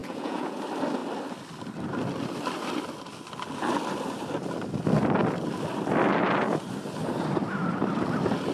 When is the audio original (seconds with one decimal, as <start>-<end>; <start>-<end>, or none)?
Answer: 0.6-8.5